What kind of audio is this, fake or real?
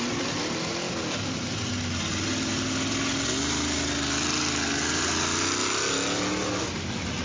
real